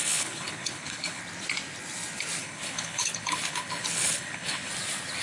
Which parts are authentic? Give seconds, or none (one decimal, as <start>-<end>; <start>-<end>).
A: 1.2-2.4; 4.7-5.2